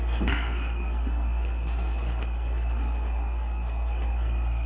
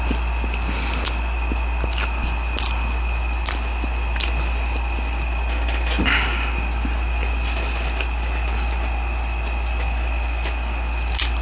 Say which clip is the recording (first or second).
second